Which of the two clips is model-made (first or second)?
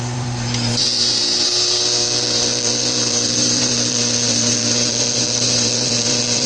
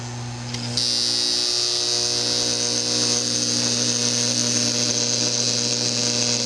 first